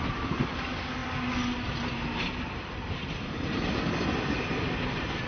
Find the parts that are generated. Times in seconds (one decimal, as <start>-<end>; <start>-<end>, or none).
none